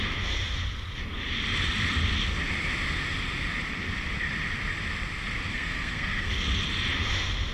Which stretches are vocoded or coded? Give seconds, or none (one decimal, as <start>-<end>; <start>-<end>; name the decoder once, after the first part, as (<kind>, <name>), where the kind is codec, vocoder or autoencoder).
5.5-6.3 (codec, SNAC)